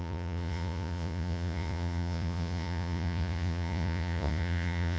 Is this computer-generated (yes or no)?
yes